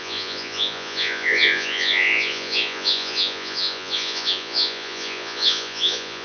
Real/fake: fake